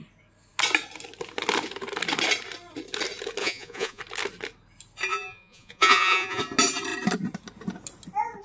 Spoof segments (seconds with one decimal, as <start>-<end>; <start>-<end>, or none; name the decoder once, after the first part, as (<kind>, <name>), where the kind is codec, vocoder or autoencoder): 3.4-4.0 (vocoder, Vocos); 5.1-6.4